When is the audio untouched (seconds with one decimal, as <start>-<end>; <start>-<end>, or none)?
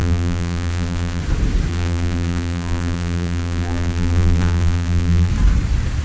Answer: 1.2-1.7; 5.3-6.0